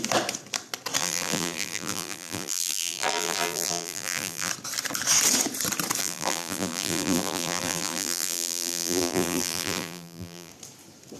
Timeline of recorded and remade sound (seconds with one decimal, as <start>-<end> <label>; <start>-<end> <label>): 0.0-1.0 recorded; 1.0-4.5 remade; 4.5-6.0 recorded; 6.0-10.5 remade; 10.5-11.2 recorded